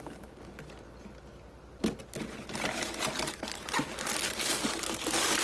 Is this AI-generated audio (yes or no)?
no